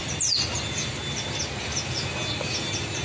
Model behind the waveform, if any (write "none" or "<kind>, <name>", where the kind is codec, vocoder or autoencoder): none